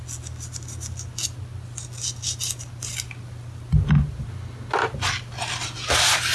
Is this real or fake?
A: real